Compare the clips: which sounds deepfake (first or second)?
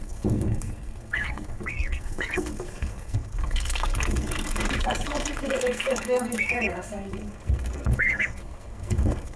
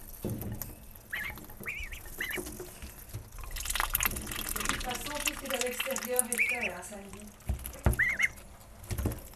first